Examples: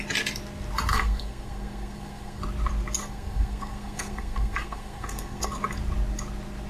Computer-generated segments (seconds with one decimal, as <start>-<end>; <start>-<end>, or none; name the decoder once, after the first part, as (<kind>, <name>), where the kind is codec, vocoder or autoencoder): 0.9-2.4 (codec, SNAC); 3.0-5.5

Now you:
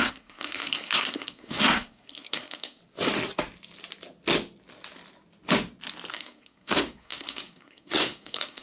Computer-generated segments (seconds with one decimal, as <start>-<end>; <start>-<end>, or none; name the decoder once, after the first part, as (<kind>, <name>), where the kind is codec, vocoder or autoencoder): 0.0-2.8 (codec, SNAC); 6.1-8.6

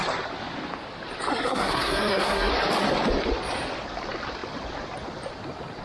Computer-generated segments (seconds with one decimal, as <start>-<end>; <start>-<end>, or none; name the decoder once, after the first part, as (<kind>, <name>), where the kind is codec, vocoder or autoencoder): 1.3-2.5 (codec, SNAC)

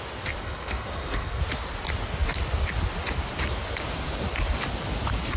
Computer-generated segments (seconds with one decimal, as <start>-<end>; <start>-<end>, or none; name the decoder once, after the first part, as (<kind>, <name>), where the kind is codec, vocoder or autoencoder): 0.4-1.4 (codec, SNAC)

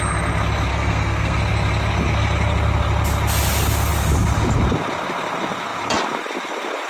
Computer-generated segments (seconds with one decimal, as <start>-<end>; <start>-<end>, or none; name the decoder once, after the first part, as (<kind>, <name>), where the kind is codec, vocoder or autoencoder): 0.7-1.4 (codec, SNAC)

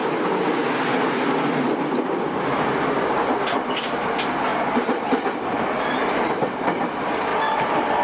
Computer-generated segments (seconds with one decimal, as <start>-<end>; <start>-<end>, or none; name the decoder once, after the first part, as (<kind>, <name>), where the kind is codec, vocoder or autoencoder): none